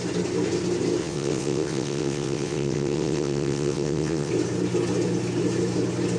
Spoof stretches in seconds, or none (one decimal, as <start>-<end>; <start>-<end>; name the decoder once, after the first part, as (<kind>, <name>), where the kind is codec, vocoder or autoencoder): 1.0-4.3 (vocoder, WaveNeXt)